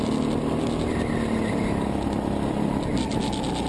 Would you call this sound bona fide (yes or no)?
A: yes